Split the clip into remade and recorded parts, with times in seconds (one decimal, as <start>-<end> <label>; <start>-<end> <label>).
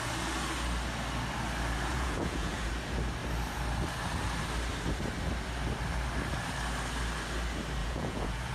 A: 0.0-1.9 recorded; 1.9-2.7 remade; 2.7-7.8 recorded; 7.8-8.5 remade